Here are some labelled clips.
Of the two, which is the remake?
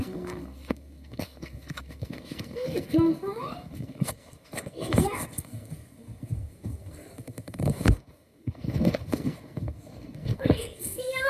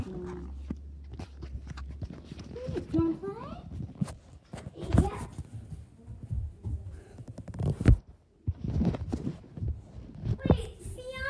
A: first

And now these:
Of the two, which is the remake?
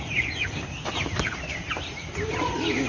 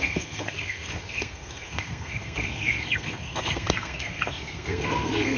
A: second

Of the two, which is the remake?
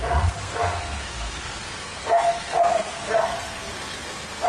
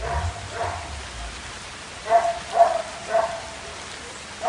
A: first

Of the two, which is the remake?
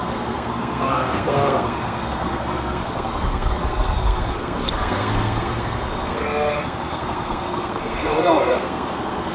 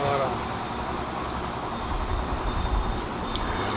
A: first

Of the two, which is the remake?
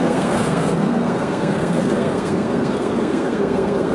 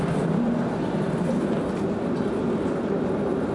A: first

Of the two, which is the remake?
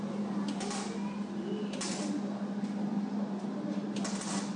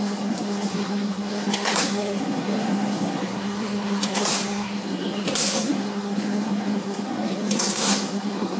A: second